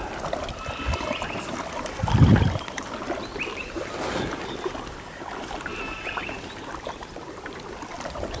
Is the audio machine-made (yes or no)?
no